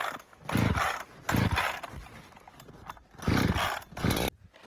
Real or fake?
real